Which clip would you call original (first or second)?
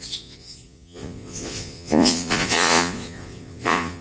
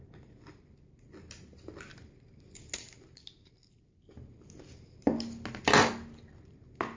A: second